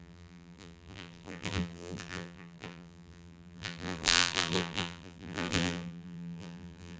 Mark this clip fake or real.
fake